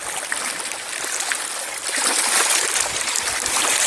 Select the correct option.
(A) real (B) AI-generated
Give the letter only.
A